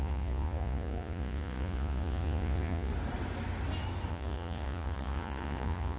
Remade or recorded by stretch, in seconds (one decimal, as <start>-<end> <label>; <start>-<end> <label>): 0.0-2.9 remade; 2.9-4.1 recorded; 4.1-6.0 remade